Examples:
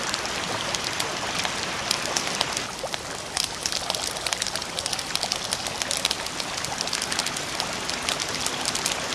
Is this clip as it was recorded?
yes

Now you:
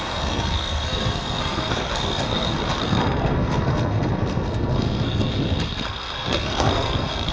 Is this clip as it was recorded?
no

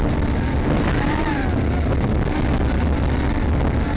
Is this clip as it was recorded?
yes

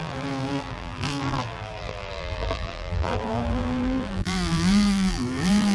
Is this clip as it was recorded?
no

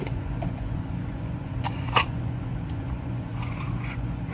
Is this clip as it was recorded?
no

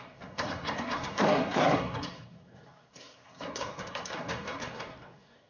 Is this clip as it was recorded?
no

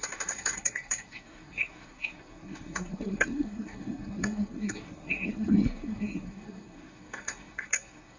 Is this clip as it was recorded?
no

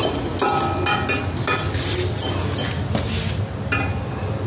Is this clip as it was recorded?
yes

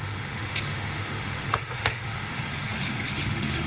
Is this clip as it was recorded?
no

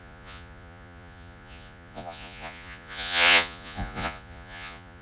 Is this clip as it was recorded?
no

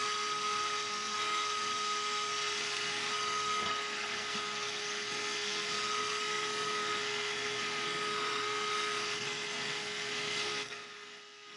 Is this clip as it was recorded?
no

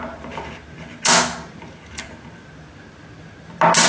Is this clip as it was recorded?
yes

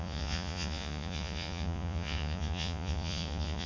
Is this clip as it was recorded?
no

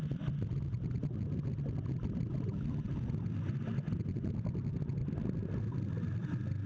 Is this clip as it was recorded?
yes